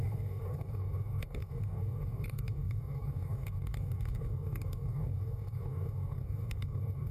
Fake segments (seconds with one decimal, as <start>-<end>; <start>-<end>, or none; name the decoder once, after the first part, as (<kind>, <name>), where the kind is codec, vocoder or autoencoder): 0.0-7.1 (codec, DAC)

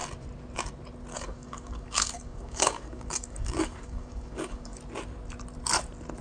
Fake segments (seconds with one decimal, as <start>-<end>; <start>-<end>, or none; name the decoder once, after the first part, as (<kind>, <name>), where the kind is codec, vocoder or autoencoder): 1.1-4.8 (codec, DAC)

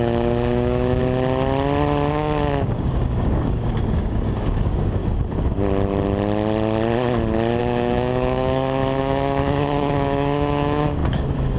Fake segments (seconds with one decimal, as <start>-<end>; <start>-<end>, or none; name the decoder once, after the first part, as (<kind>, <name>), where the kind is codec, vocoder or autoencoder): 0.0-1.0 (codec, DAC); 2.1-5.0; 7.6-11.6

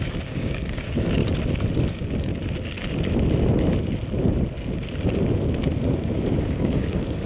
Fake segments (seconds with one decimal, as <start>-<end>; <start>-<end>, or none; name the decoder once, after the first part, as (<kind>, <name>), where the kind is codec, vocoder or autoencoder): 0.0-1.2 (codec, DAC); 1.9-2.3; 6.5-7.3

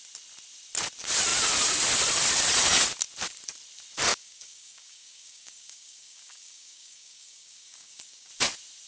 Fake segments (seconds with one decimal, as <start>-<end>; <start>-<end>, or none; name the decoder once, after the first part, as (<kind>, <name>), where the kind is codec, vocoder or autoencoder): 4.1-8.3 (codec, DAC)

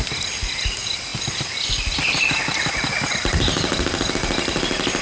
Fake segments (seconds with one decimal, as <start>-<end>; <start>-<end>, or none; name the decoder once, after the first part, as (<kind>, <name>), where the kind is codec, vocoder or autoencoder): none